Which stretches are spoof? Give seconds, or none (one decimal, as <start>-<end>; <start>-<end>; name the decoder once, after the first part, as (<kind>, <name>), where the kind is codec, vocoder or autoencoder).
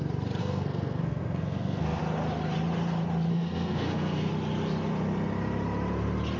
0.4-2.0 (codec, SNAC); 3.3-4.3